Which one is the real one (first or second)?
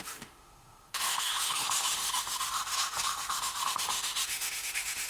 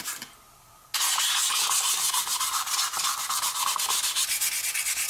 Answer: second